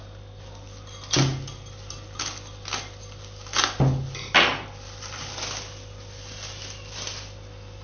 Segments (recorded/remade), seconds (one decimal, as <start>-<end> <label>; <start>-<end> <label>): 0.0-7.8 recorded